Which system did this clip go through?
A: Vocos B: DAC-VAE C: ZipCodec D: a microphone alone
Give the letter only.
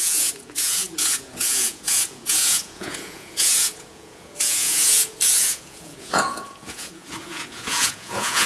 A